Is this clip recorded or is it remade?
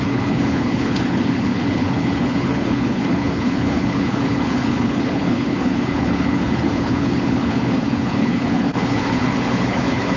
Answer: remade